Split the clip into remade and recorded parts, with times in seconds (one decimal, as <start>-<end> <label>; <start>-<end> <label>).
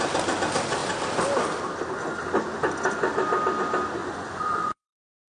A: 0.0-4.0 recorded; 4.0-5.3 remade